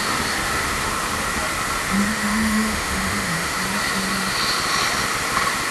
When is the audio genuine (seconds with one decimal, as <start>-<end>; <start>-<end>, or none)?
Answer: 0.0-2.1; 3.6-5.7